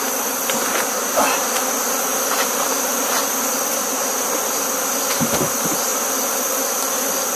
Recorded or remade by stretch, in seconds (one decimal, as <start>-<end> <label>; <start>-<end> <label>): 0.0-7.4 recorded